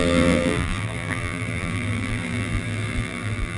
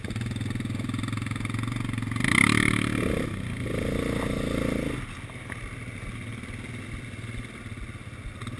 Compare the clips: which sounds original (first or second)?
second